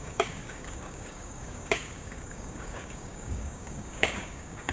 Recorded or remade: remade